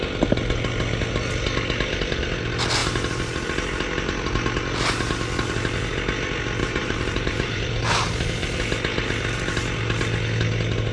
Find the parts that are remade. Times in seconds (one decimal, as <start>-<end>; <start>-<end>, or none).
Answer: 6.6-8.6